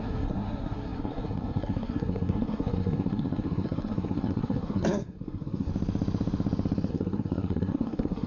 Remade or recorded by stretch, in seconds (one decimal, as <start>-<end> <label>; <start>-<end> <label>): 0.0-5.7 remade; 5.7-6.9 recorded; 6.9-8.3 remade